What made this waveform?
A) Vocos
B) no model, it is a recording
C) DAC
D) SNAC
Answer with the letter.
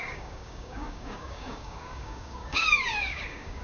C